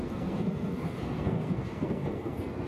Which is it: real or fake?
fake